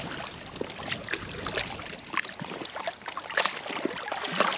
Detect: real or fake real